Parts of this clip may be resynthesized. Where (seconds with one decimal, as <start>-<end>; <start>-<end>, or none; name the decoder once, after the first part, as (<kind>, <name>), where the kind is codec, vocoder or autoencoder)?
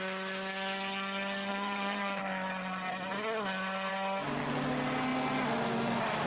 1.5-2.2 (vocoder, Vocos)